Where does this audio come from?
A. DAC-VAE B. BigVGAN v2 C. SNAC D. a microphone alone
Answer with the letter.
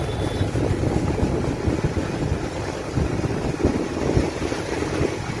D